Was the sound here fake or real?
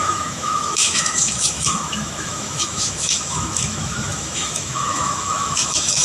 fake